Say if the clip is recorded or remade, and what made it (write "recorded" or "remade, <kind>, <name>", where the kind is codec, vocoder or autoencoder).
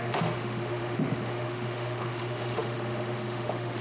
remade, autoencoder, DAC-VAE